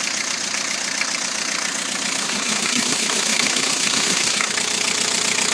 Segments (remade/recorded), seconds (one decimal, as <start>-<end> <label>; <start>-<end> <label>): 0.0-2.2 recorded; 2.2-4.5 remade; 4.5-5.5 recorded